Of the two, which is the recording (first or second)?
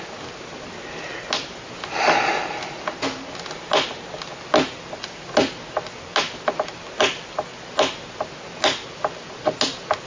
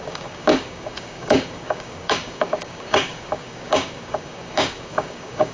first